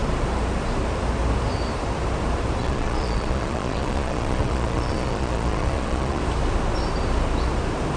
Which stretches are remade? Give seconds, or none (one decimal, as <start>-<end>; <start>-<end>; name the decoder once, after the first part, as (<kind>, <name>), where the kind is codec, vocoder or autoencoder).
2.6-6.2 (vocoder, Vocos)